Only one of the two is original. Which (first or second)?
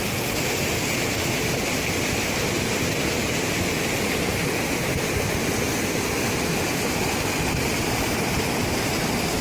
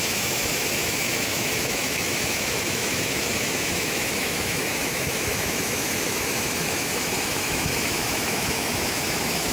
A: first